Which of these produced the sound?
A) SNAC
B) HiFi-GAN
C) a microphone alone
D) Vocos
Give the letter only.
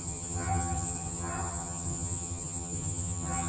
B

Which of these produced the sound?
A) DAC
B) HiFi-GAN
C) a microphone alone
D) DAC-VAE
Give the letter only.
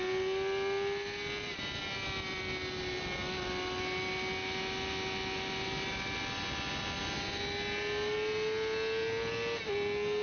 C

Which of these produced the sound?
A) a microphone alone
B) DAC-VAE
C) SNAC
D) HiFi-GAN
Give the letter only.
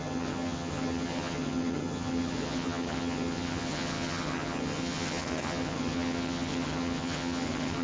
D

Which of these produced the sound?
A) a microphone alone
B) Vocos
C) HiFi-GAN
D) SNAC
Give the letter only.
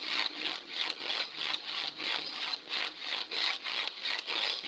C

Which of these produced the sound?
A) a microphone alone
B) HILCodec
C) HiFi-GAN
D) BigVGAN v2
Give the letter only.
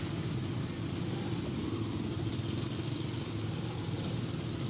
A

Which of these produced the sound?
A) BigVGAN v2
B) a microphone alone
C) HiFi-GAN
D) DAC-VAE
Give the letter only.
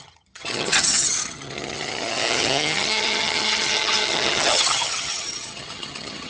C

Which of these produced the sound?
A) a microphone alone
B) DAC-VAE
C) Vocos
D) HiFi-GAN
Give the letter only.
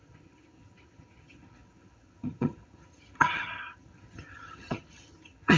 D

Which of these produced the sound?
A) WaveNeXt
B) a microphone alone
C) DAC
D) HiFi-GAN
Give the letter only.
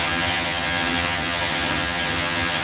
D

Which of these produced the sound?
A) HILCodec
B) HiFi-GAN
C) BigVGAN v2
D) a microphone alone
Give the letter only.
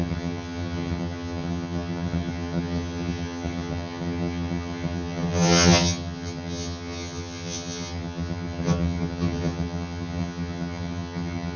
B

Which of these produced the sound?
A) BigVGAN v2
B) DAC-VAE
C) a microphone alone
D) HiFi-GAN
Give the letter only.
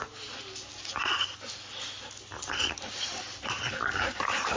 C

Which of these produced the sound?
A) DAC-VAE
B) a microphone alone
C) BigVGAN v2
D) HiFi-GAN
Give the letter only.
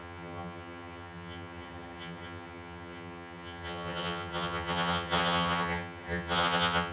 D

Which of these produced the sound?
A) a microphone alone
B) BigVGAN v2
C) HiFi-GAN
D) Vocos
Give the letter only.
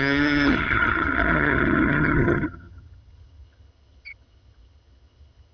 C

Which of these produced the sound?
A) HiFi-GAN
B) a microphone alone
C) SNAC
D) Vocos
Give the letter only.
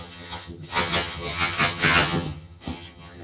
A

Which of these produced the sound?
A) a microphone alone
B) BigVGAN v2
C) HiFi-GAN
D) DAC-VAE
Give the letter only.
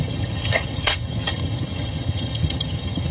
C